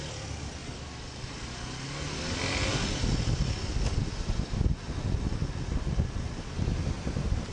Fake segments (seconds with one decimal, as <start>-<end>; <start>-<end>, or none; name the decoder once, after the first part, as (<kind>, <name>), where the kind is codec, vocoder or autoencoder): none